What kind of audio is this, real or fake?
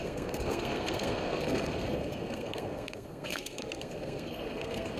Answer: fake